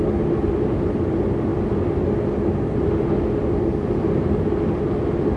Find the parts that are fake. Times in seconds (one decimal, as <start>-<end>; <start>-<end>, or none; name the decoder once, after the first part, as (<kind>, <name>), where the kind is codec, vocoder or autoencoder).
none